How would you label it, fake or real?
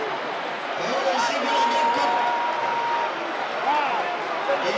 fake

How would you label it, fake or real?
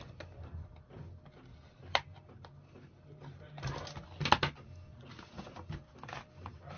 real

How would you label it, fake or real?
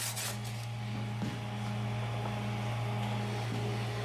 real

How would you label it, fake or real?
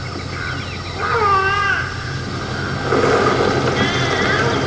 real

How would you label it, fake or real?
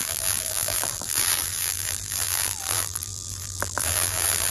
fake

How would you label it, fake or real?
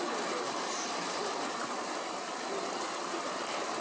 fake